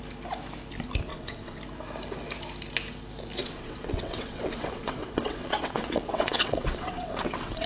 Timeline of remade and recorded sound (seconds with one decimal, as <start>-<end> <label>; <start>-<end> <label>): 0.0-1.1 recorded; 1.1-1.6 remade; 1.6-3.4 recorded; 3.4-7.7 remade